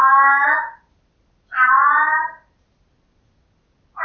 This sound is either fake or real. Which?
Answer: real